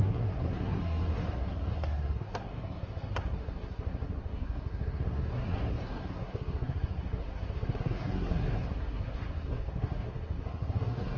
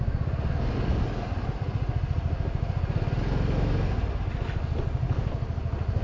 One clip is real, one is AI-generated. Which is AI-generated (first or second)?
first